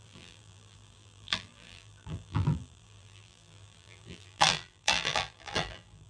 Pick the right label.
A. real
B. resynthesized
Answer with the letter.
B